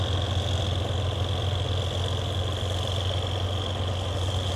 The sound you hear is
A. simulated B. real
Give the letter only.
B